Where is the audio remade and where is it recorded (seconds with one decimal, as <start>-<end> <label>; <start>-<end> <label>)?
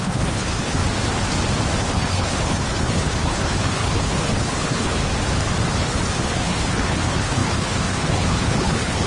0.0-0.8 remade; 0.8-1.8 recorded; 1.8-5.0 remade; 5.0-5.7 recorded; 5.7-9.1 remade